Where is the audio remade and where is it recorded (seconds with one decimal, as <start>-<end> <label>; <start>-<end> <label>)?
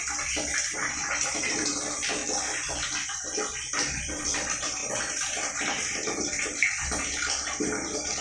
0.0-0.7 recorded; 0.7-1.8 remade; 1.8-4.8 recorded; 4.8-7.3 remade; 7.3-8.2 recorded